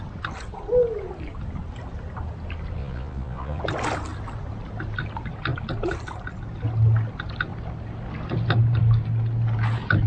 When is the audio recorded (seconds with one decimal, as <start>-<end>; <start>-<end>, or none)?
0.0-2.8; 3.6-10.1

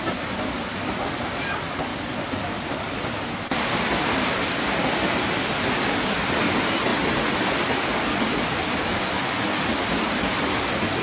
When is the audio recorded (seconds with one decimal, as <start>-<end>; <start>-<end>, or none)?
0.0-11.0